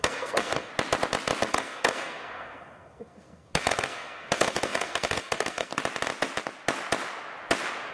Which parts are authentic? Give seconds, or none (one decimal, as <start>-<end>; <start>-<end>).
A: 0.7-1.5; 5.7-7.9

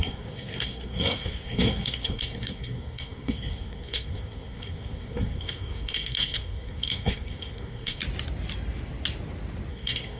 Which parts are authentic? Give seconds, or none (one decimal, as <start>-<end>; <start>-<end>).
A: 8.0-9.7

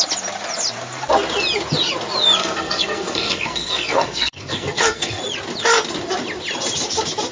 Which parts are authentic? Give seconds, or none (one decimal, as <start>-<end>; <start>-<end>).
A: 0.0-2.4; 5.2-7.3

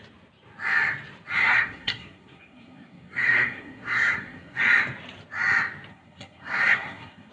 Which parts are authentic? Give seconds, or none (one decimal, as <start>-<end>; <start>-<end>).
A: 0.0-1.4; 4.6-5.9

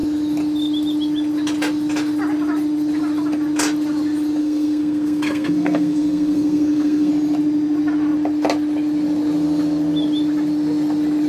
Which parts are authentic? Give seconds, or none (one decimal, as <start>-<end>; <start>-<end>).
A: 0.0-4.4; 7.1-11.3

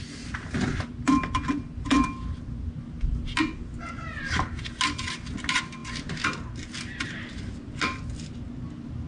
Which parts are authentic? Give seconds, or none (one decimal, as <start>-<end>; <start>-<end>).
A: 0.0-9.1

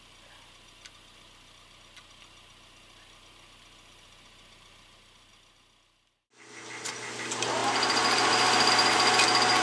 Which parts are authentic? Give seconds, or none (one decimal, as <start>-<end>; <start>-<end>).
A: 0.0-9.6

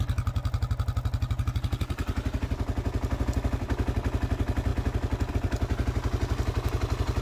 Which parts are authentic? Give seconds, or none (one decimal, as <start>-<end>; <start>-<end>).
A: 0.0-7.2